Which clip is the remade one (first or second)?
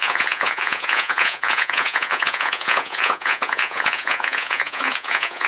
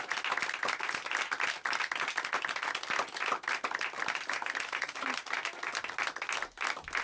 first